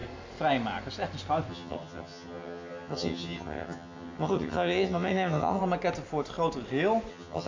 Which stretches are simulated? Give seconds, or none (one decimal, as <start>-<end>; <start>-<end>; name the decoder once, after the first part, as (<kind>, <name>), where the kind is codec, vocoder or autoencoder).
1.5-5.6 (vocoder, HiFi-GAN); 7.1-7.5